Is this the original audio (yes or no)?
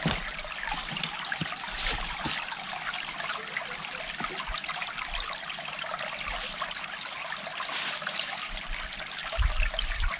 yes